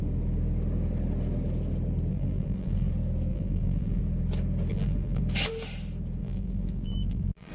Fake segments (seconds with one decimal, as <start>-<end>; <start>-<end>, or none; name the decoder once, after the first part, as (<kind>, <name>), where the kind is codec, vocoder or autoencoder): 2.1-2.9 (vocoder, BigVGAN v2); 3.3-4.0; 4.7-5.2; 6.2-7.5